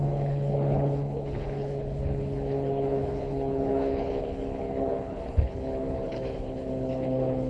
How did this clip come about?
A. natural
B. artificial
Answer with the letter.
B